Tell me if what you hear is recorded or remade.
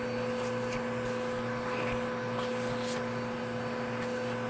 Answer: recorded